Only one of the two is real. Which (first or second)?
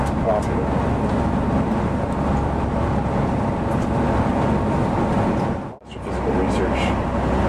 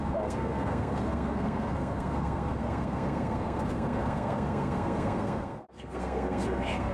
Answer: first